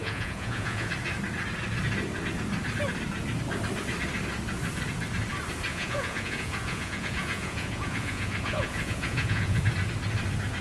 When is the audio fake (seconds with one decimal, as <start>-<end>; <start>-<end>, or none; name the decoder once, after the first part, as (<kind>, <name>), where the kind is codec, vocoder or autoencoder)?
0.0-0.9 (vocoder, Vocos); 5.7-9.6